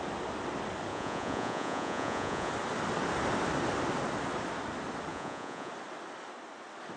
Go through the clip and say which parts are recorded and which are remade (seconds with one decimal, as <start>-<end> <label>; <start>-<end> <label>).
0.0-0.9 recorded; 0.9-2.5 remade; 2.5-5.1 recorded; 5.1-5.7 remade; 5.7-7.0 recorded